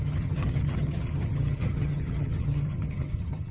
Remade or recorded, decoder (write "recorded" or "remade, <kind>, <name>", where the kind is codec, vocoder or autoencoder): remade, vocoder, HiFi-GAN